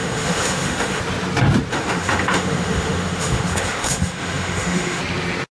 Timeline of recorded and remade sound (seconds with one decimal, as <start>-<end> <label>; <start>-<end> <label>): 0.0-1.0 remade; 1.0-1.7 recorded; 1.7-5.0 remade; 5.0-5.5 recorded

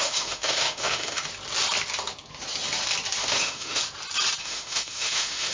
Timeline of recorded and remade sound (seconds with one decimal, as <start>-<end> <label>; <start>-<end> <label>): 0.0-1.2 remade; 1.2-3.2 recorded; 3.2-3.8 remade; 3.8-4.4 recorded; 4.4-5.5 remade

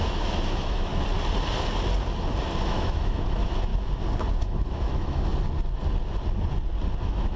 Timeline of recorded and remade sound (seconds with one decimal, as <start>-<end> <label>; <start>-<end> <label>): 0.0-0.9 remade; 0.9-2.6 recorded; 2.6-3.7 remade; 3.7-4.4 recorded; 4.4-5.3 remade; 5.3-7.0 recorded; 7.0-7.4 remade

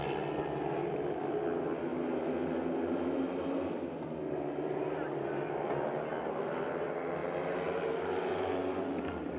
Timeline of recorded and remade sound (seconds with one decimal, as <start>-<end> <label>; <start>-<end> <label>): 0.0-0.8 recorded; 0.8-1.3 remade; 1.3-9.4 recorded

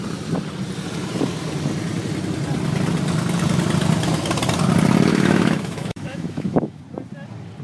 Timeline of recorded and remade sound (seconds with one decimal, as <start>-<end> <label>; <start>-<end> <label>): 0.0-5.1 recorded; 5.1-6.8 remade; 6.8-7.6 recorded